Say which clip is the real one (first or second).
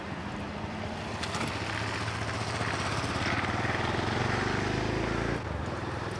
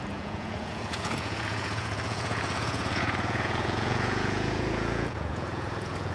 first